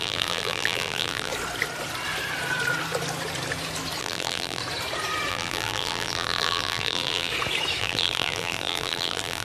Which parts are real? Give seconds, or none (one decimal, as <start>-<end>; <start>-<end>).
1.3-4.0; 4.6-5.3; 7.3-7.8